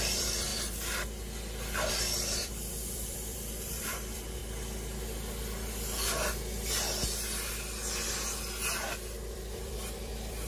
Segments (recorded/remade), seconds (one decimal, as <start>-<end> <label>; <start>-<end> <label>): 0.0-0.5 remade; 0.5-1.9 recorded; 1.9-4.4 remade; 4.4-9.3 recorded; 9.3-10.5 remade